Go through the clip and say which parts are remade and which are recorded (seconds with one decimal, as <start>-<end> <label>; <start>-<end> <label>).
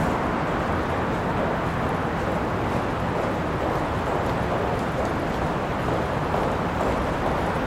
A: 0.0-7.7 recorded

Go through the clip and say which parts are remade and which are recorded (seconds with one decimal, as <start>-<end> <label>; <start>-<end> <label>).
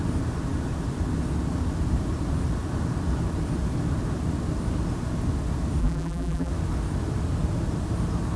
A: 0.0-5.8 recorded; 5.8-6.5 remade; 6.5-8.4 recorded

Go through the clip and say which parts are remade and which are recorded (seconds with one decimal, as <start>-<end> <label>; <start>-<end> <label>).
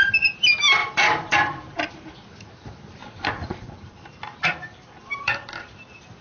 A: 0.0-0.8 recorded; 0.8-1.9 remade; 1.9-3.0 recorded; 3.0-6.2 remade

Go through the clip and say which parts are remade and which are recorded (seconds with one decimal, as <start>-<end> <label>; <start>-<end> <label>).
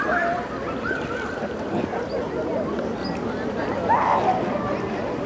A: 0.0-3.0 remade; 3.0-3.9 recorded; 3.9-5.3 remade